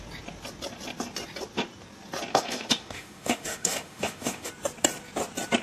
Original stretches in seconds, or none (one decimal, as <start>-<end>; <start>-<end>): 0.0-2.3; 4.5-5.6